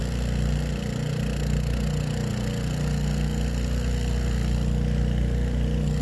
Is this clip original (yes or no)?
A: yes